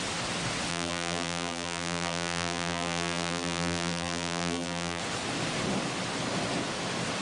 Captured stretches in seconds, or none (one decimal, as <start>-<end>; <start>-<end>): 0.0-0.7; 5.0-7.2